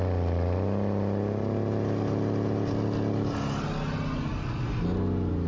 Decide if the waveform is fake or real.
real